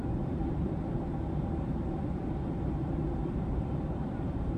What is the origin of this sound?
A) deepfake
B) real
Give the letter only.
A